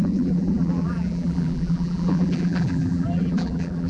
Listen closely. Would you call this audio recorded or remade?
remade